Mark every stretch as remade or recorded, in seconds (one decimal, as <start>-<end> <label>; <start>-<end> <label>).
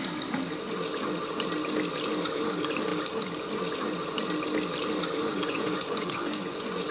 0.0-5.3 recorded; 5.3-6.9 remade